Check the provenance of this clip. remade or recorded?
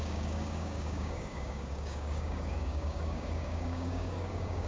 remade